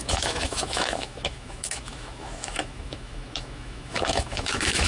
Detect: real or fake fake